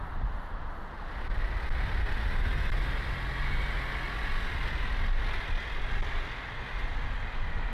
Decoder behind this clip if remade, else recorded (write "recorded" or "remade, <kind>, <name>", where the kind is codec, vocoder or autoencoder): recorded